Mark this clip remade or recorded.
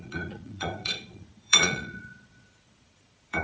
remade